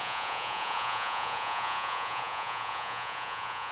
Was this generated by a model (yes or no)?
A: yes